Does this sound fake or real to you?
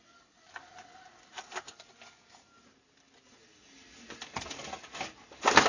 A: real